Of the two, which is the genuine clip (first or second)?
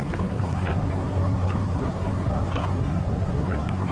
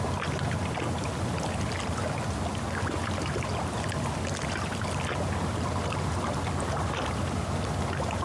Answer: second